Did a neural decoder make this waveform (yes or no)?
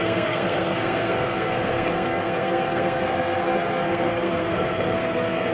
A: yes